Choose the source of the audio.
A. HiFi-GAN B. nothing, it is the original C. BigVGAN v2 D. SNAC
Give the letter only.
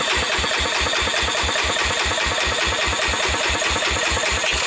B